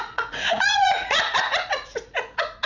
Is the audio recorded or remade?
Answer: remade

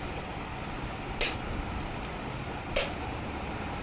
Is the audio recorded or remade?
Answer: recorded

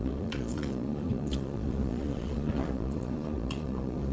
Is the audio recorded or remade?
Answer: remade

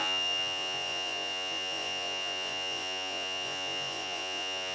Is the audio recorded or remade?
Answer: remade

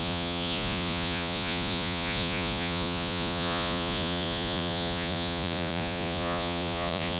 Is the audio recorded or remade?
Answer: remade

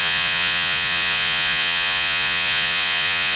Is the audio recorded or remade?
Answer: remade